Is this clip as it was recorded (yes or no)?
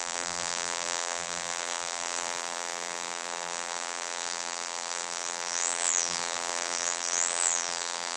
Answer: no